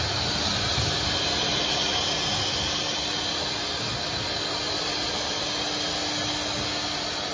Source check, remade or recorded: recorded